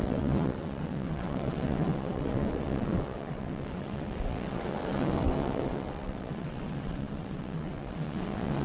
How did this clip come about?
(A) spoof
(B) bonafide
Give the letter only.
A